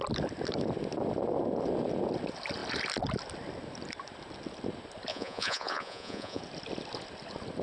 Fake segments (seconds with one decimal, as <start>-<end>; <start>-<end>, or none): 5.1-6.4